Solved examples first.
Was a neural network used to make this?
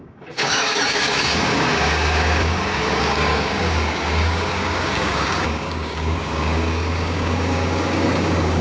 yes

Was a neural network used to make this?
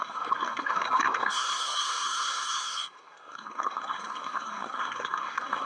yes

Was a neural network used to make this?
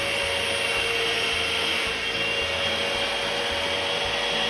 no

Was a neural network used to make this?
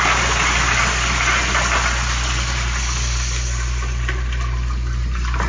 no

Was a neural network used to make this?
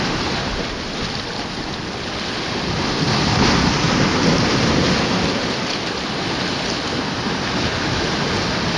no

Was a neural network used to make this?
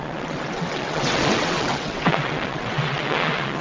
yes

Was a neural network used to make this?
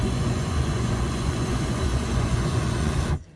yes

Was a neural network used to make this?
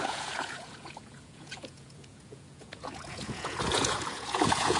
yes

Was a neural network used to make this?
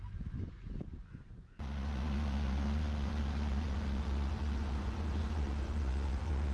yes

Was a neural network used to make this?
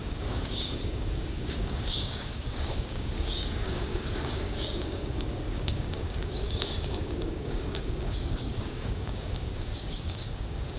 yes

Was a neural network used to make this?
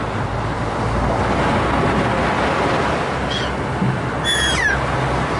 no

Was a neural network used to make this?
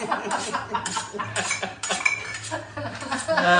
no